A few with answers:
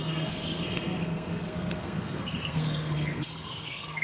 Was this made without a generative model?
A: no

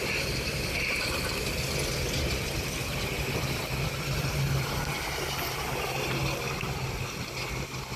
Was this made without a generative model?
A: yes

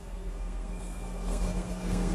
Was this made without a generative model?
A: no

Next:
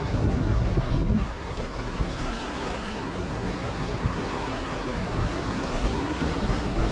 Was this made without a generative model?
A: no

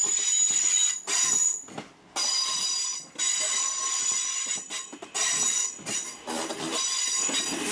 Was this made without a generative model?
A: yes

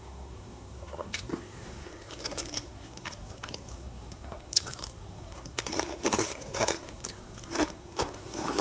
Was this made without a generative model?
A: no